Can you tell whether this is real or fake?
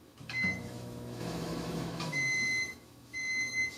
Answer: fake